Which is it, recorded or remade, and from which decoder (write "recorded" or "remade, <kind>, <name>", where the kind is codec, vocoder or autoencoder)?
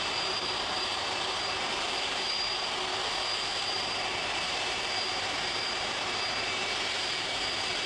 remade, vocoder, BigVGAN v2